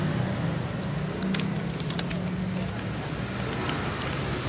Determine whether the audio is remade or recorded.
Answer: recorded